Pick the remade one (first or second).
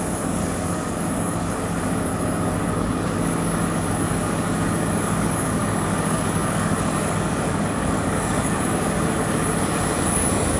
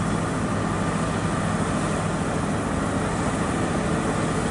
first